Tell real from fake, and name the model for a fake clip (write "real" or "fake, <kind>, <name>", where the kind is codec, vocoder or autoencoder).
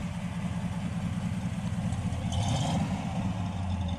real